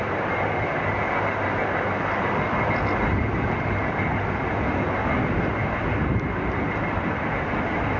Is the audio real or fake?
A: real